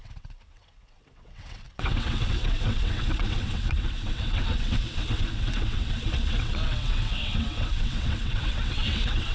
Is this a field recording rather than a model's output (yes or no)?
no